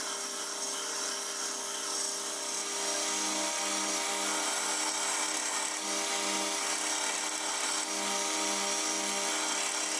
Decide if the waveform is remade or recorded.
recorded